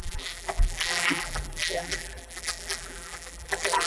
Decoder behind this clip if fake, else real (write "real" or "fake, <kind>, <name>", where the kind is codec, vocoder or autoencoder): fake, vocoder, BigVGAN v2